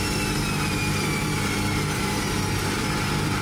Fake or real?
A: real